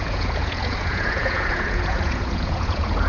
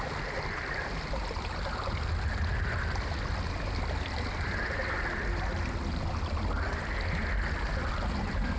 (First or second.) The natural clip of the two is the second